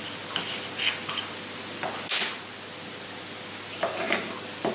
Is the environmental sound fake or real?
real